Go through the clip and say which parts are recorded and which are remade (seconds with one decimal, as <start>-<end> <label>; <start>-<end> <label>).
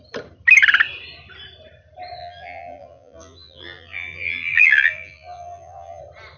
0.0-2.2 recorded; 2.2-6.0 remade; 6.0-6.4 recorded